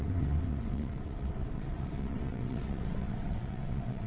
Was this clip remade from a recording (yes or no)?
yes